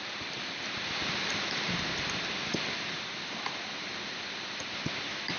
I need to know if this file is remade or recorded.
recorded